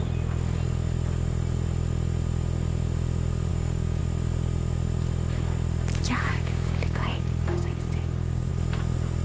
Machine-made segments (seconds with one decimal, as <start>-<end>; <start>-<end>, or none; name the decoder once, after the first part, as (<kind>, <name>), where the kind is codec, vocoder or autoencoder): 3.5-4.0 (codec, DAC); 6.3-8.5